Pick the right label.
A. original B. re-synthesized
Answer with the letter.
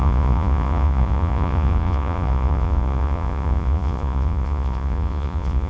B